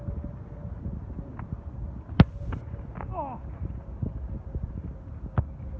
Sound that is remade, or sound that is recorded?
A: recorded